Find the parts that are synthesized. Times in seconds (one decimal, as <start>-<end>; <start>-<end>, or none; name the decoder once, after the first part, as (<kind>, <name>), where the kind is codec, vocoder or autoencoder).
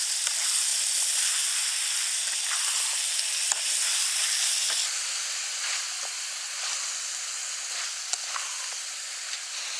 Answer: none